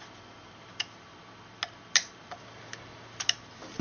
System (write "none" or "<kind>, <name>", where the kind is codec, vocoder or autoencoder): none